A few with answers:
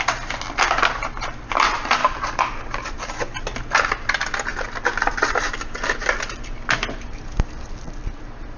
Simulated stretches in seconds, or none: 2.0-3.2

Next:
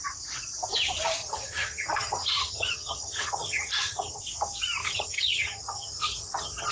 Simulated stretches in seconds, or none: 1.2-4.2; 4.8-6.7

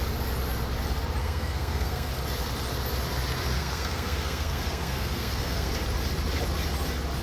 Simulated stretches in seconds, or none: 1.2-2.1; 3.6-5.7

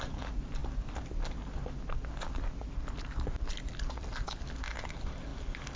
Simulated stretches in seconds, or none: none

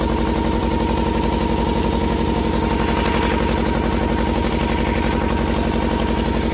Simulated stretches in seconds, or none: none